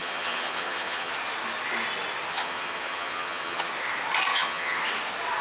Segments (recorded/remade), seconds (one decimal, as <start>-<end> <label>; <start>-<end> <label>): 0.0-1.1 remade; 1.1-2.3 recorded; 2.3-3.7 remade; 3.7-4.3 recorded; 4.3-4.8 remade; 4.8-5.4 recorded

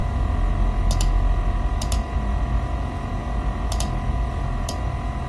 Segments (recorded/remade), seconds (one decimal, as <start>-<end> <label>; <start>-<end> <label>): 0.0-5.3 recorded

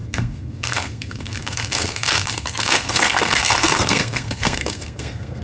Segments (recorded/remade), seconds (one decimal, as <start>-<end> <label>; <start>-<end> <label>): 0.0-5.4 remade

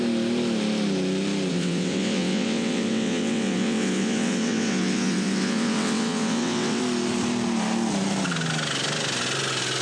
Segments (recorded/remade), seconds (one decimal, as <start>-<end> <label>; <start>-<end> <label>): 0.0-1.5 recorded; 1.5-6.8 remade; 6.8-9.8 recorded

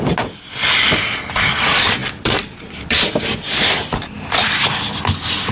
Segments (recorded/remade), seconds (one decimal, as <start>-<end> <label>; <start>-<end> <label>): 0.0-2.0 recorded; 2.0-4.8 remade; 4.8-5.5 recorded

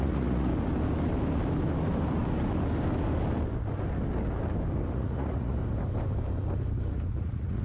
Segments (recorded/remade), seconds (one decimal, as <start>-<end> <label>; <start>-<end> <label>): 0.0-0.5 remade; 0.5-4.9 recorded; 4.9-5.6 remade; 5.6-7.1 recorded; 7.1-7.6 remade